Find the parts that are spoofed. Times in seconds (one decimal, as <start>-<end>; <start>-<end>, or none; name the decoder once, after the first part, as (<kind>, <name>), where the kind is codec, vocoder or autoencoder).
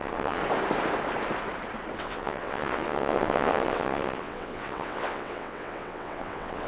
0.0-0.4 (vocoder, WaveNeXt); 2.0-6.7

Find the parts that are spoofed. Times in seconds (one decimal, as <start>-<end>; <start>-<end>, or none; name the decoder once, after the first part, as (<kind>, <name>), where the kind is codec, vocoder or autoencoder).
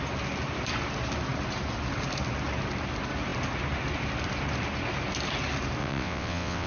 5.8-6.7 (vocoder, WaveNeXt)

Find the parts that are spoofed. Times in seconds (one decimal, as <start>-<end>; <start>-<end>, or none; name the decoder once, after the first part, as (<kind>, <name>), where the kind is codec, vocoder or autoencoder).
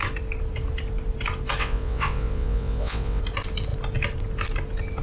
1.6-3.2 (vocoder, WaveNeXt)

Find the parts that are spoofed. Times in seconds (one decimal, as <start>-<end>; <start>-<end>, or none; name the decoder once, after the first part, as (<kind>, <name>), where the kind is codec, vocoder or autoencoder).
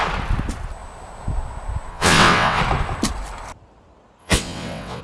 1.9-2.6 (vocoder, WaveNeXt); 4.2-5.0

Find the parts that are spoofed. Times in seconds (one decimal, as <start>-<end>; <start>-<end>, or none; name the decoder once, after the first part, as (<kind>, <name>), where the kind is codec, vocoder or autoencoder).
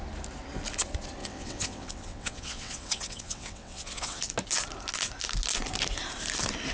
1.2-4.2 (vocoder, WaveNeXt)